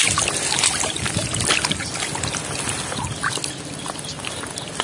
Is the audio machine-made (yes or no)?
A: no